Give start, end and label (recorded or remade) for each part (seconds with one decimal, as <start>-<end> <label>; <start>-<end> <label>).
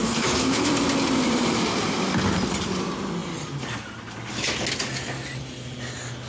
0.0-0.7 remade; 0.7-6.3 recorded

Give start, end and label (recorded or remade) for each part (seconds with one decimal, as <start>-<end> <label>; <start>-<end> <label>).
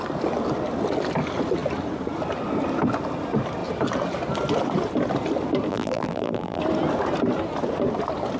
0.0-5.7 recorded; 5.7-6.6 remade; 6.6-8.4 recorded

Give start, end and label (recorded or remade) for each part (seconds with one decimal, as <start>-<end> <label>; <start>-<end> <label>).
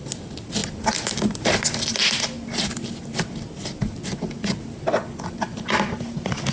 0.0-6.5 recorded